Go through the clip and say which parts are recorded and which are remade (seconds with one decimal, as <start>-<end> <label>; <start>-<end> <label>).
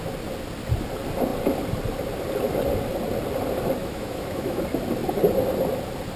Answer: 0.0-3.8 recorded; 3.8-4.6 remade; 4.6-6.2 recorded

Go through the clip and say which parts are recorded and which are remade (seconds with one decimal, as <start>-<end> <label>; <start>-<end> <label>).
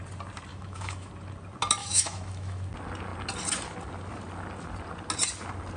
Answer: 0.0-0.5 recorded; 0.5-1.1 remade; 1.1-1.8 recorded; 1.8-2.7 remade; 2.7-5.8 recorded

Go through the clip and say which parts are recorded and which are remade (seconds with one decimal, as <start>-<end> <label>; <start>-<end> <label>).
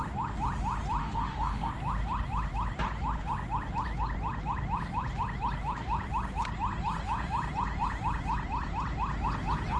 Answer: 0.0-1.0 recorded; 1.0-1.7 remade; 1.7-9.8 recorded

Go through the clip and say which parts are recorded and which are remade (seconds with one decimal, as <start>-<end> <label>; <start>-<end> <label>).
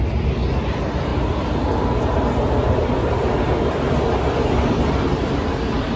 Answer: 0.0-6.0 recorded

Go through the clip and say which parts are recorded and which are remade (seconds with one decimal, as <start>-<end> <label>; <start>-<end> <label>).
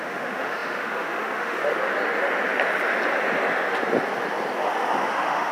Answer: 0.0-1.8 remade; 1.8-5.1 recorded; 5.1-5.5 remade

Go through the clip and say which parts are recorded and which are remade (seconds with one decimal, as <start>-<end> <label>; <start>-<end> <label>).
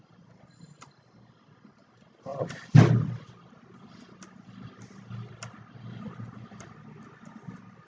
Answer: 0.0-7.9 recorded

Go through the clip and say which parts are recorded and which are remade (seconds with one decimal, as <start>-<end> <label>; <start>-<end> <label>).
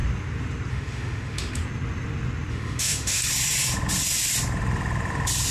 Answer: 0.0-0.7 recorded; 0.7-1.6 remade; 1.6-2.5 recorded; 2.5-3.2 remade; 3.2-5.5 recorded